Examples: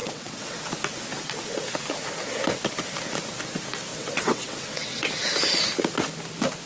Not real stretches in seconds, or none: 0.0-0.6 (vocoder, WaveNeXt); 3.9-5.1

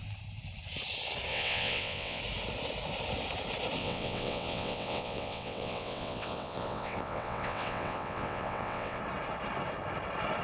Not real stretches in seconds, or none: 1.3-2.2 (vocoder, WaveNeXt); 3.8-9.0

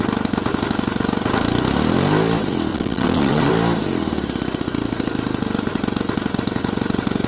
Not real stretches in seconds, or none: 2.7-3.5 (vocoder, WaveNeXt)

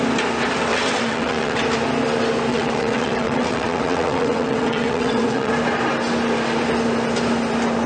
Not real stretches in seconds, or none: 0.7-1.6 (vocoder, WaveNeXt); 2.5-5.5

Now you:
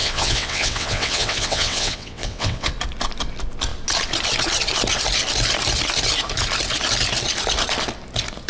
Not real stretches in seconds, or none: 0.0-2.7 (vocoder, WaveNeXt)

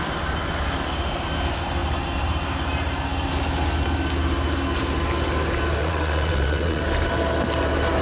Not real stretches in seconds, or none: 5.8-6.8 (vocoder, WaveNeXt)

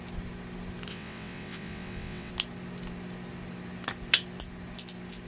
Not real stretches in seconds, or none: 0.9-2.3 (vocoder, WaveNeXt)